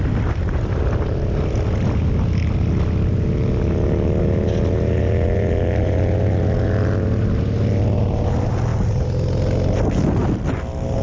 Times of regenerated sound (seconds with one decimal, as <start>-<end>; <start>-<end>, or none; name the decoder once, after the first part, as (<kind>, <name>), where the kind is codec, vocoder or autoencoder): none